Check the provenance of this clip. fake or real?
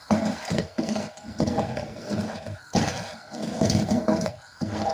fake